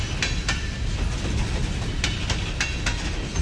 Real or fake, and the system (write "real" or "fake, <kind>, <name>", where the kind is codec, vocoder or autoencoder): real